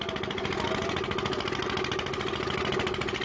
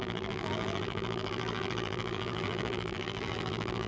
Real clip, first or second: first